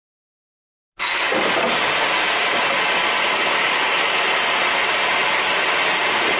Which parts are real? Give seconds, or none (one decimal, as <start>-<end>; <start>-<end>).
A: 0.0-6.4